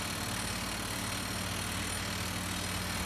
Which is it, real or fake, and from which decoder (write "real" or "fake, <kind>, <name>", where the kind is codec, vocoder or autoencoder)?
real